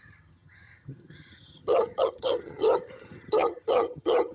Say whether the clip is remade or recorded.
remade